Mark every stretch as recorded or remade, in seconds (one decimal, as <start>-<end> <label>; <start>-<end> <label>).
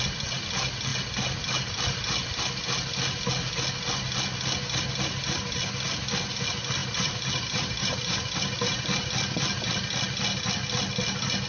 0.0-6.8 recorded; 6.8-9.1 remade; 9.1-11.5 recorded